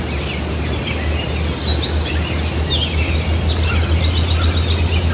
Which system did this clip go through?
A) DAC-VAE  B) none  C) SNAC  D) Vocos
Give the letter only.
B